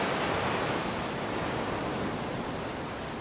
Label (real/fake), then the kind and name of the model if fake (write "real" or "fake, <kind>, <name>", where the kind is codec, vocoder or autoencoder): real